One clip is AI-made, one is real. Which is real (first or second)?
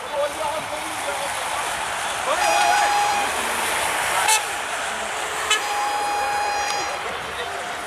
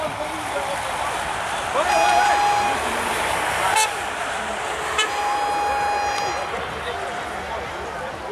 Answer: second